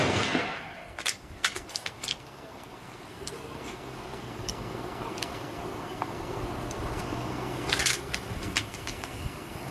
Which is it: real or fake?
fake